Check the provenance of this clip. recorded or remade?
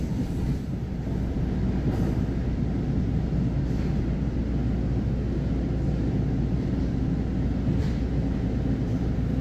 recorded